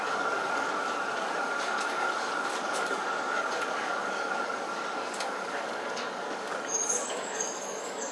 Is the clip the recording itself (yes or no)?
no